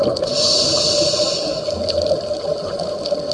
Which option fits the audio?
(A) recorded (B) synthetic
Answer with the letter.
A